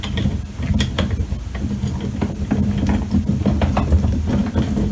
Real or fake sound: real